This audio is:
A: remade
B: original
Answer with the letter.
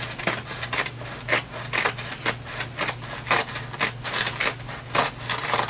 B